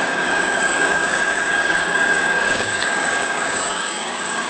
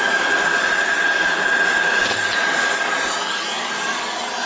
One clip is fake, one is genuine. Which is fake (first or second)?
first